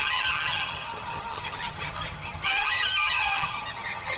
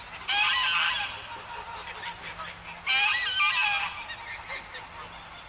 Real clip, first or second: second